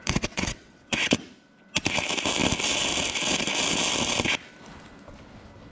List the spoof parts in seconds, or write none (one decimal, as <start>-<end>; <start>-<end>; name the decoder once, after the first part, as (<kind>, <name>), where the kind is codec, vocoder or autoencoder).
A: 0.0-1.2 (vocoder, WaveNeXt)